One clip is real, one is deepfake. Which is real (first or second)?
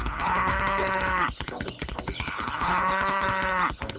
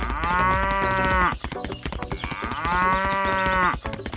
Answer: second